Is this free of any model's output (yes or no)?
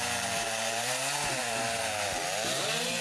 no